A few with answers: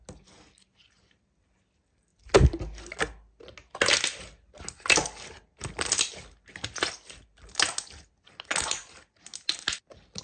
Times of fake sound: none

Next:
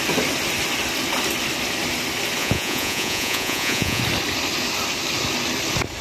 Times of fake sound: 2.4-4.0 (vocoder, Vocos)

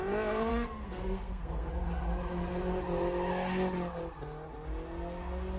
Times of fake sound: 0.5-1.7 (codec, SNAC)